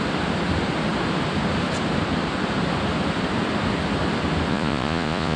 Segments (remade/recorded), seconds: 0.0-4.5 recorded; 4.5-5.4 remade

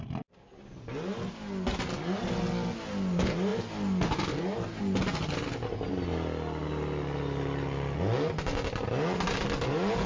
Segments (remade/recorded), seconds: 0.0-10.1 recorded

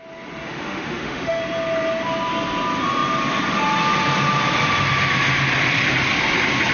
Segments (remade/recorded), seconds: 0.0-0.4 recorded; 0.4-1.4 remade; 1.4-6.7 recorded

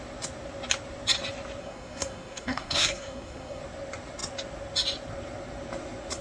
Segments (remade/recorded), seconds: 0.0-1.6 recorded; 1.6-3.6 remade; 3.6-6.2 recorded